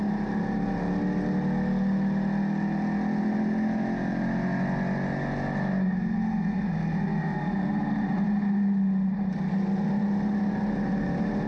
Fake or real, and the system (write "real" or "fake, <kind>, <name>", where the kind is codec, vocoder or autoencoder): real